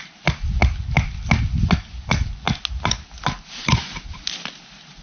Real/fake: real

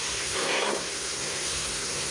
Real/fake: fake